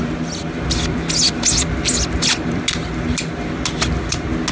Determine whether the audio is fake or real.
real